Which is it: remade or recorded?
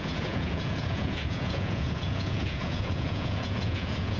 remade